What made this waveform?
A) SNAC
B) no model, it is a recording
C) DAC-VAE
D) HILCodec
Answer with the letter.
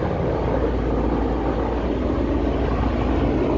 B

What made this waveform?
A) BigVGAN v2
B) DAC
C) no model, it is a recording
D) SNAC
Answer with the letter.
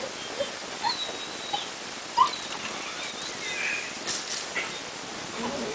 C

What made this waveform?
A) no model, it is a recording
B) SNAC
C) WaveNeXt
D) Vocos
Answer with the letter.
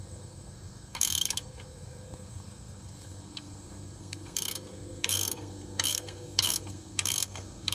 B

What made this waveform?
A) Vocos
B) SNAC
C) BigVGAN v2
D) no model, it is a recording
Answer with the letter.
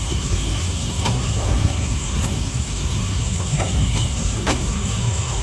B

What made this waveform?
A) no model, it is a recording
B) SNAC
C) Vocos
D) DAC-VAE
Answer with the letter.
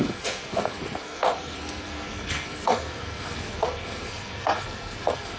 B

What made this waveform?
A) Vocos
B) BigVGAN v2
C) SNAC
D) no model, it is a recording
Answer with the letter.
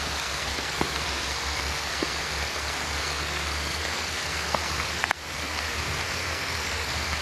C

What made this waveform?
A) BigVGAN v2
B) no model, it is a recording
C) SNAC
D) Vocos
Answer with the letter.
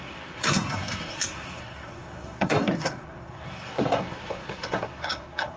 C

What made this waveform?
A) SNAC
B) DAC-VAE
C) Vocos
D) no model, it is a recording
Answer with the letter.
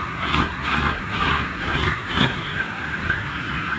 A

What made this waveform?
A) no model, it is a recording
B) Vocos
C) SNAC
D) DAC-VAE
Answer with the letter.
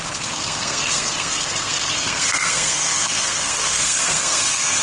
C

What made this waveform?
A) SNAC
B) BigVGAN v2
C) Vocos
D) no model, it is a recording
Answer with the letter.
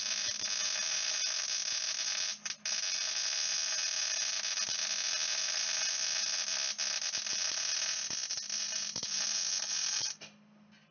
D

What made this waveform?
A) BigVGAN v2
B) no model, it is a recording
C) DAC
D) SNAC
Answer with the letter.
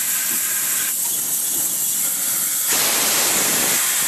B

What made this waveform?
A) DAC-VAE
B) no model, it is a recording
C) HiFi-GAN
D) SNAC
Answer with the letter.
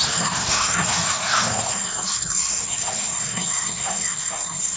D